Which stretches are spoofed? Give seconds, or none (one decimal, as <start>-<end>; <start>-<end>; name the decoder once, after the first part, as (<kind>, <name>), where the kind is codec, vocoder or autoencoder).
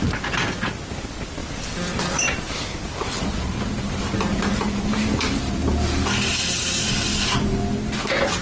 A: 1.4-2.3 (vocoder, BigVGAN v2)